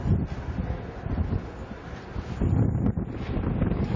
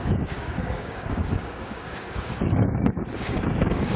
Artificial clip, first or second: second